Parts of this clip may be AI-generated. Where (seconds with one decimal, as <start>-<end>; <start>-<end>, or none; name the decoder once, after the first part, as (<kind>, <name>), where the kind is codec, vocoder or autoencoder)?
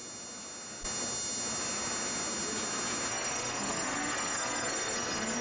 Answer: 3.1-5.4 (codec, SNAC)